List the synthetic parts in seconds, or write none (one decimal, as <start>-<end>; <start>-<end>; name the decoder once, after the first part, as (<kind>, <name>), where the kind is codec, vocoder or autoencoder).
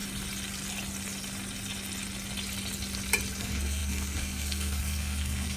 3.4-5.6 (codec, SNAC)